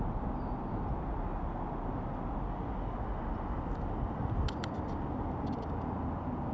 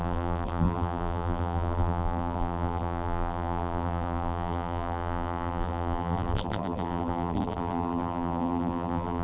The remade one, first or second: second